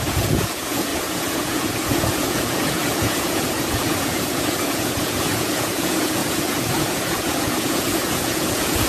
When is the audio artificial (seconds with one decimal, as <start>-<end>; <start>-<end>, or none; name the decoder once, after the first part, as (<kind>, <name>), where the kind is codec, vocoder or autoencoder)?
0.0-8.9 (vocoder, Vocos)